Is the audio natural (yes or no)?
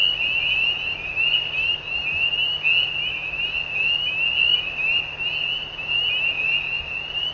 yes